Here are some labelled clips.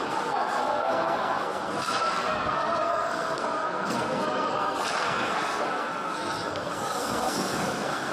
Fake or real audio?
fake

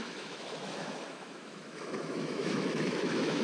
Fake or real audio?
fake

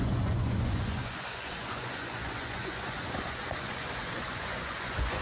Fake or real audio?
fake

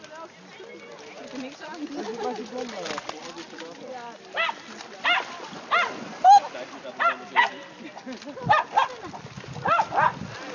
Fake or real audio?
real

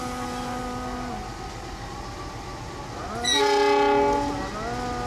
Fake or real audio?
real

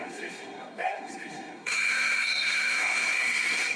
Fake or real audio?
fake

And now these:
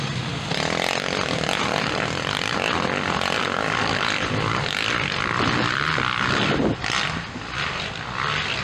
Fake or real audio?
real